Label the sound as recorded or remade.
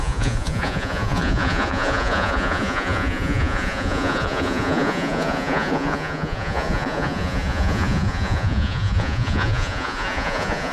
remade